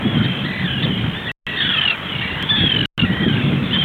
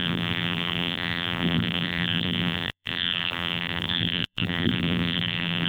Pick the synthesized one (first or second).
second